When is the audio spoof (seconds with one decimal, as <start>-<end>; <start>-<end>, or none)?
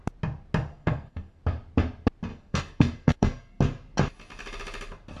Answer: 0.7-1.4; 2.3-3.6